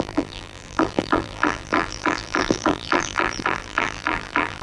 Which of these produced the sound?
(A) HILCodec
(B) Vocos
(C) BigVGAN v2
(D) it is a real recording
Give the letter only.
C